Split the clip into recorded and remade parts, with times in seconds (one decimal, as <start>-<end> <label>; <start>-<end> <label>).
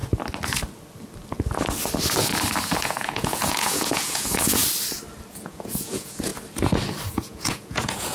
0.0-2.8 recorded; 2.8-4.6 remade; 4.6-5.3 recorded; 5.3-6.3 remade; 6.3-7.1 recorded; 7.1-8.1 remade